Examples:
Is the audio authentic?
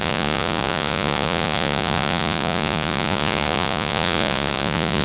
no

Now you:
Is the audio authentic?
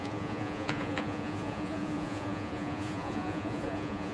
no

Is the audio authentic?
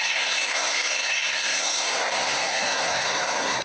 no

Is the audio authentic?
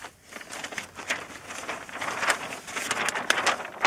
yes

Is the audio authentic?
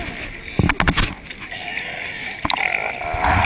yes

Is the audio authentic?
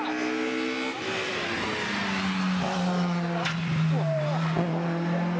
yes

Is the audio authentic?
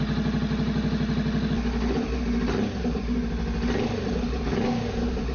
yes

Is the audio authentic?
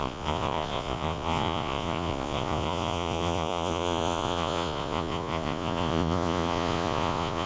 no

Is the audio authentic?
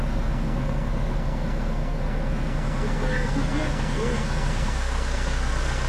no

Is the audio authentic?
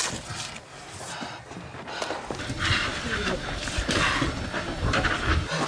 yes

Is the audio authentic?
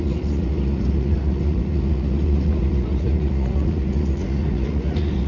no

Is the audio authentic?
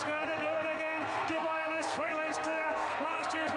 no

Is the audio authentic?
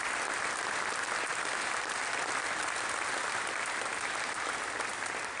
yes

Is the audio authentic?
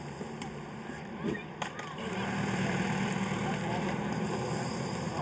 no